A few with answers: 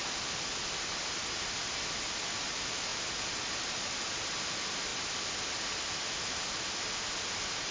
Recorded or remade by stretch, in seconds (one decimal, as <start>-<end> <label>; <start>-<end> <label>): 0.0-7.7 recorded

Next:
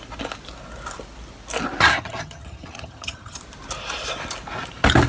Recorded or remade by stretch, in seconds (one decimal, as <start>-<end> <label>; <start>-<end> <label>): 0.0-1.9 recorded; 1.9-3.4 remade; 3.4-5.1 recorded

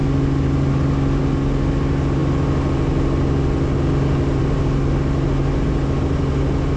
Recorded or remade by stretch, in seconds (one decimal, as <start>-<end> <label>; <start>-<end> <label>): 0.0-6.8 recorded

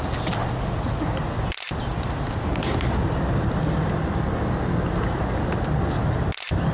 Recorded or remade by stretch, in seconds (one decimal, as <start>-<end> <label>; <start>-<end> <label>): 0.0-6.7 recorded

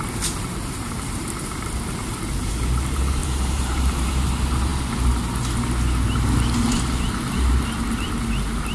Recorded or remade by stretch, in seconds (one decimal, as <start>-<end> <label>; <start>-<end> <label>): 0.0-0.5 recorded; 0.5-2.2 remade; 2.2-3.2 recorded; 3.2-4.1 remade; 4.1-8.7 recorded

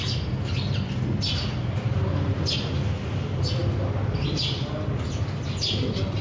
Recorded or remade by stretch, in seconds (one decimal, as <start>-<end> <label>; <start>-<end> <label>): 0.0-6.2 recorded